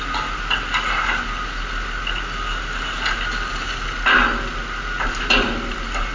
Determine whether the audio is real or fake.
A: real